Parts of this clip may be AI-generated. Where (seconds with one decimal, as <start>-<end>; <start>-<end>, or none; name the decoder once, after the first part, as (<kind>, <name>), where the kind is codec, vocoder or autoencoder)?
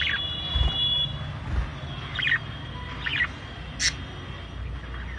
none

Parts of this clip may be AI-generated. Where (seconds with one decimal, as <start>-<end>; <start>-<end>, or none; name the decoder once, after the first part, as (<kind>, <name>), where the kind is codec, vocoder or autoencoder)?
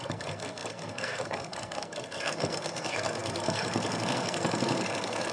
0.0-5.3 (codec, SNAC)